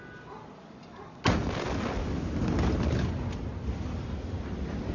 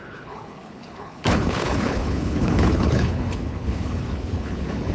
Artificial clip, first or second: second